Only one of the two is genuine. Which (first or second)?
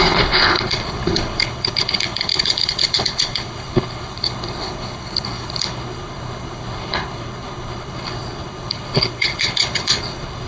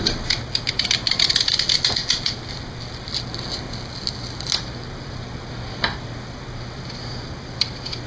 second